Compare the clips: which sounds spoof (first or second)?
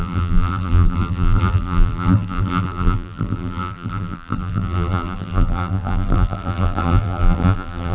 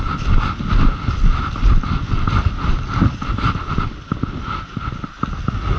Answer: first